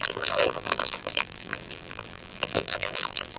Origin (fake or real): fake